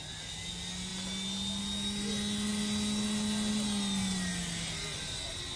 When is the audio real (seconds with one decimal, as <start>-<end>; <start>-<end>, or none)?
0.0-5.6